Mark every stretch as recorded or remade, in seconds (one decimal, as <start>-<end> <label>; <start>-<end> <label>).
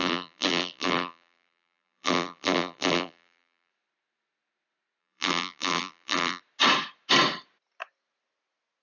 0.0-3.7 remade; 3.7-5.0 recorded; 5.0-6.4 remade; 6.4-8.8 recorded